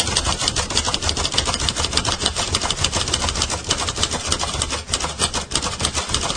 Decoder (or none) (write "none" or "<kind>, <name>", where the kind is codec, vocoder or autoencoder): none